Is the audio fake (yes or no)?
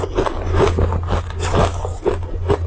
no